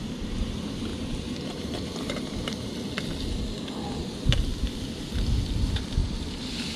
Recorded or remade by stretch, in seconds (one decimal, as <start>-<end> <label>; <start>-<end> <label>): 0.0-0.9 recorded; 0.9-2.7 remade; 2.7-6.0 recorded; 6.0-6.8 remade